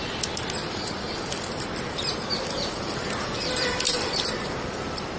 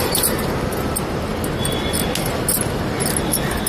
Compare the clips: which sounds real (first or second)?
second